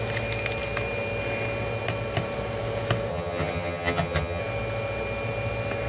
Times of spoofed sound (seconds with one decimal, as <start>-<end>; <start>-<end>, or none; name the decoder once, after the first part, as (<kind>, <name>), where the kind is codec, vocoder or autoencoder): 3.1-4.4 (vocoder, HiFi-GAN)